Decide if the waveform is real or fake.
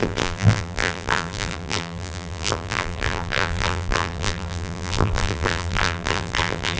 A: fake